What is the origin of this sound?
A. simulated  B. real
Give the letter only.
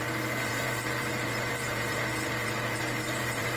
A